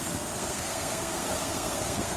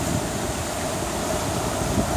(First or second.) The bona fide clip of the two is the second